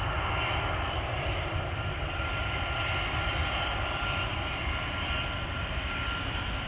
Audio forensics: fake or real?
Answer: real